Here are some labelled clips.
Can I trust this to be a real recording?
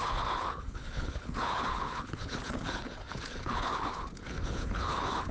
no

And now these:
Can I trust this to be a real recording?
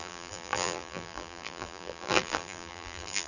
no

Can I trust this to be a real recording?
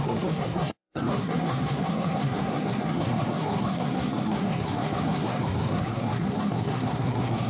no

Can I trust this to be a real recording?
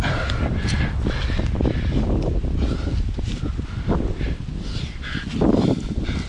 yes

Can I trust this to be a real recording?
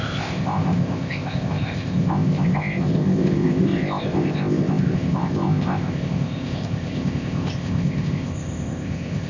no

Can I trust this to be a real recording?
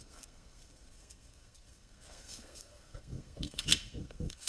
no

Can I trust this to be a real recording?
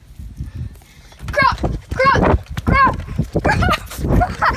yes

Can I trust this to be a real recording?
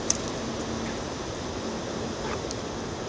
yes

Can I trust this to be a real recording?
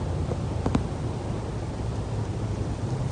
yes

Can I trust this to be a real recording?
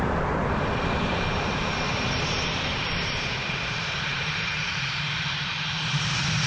no